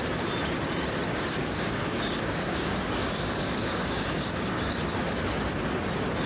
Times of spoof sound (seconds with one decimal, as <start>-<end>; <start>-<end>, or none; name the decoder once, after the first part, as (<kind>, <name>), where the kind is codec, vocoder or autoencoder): 1.1-4.8 (codec, DAC)

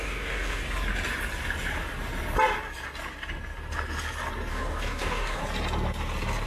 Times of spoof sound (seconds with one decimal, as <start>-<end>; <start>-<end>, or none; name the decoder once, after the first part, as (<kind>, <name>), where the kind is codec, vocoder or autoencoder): 0.0-0.6 (codec, DAC); 4.5-5.4

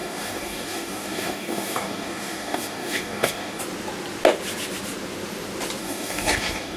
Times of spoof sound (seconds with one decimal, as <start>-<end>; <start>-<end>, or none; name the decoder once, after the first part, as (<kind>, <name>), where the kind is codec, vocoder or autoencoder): 0.0-3.6 (codec, DAC); 5.8-6.8

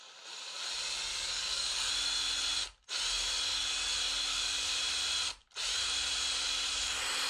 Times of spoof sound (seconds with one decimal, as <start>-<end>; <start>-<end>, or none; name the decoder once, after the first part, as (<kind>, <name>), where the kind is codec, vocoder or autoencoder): 1.1-1.9 (codec, DAC); 4.3-4.8

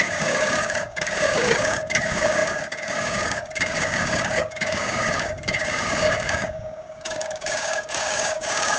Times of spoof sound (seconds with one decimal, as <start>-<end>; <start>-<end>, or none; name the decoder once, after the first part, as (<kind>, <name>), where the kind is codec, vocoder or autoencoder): 0.0-8.8 (codec, DAC)

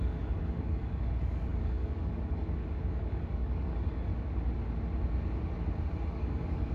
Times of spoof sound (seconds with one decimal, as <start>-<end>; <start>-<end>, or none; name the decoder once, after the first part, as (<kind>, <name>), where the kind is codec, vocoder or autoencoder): 0.0-4.1 (codec, DAC); 6.1-6.7

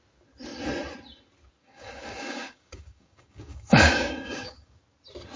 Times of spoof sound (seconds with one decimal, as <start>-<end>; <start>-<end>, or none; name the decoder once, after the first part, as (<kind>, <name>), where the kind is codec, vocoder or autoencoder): 1.6-4.8 (codec, DAC)